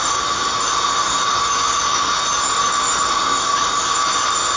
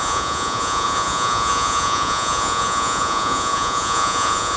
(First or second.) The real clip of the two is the first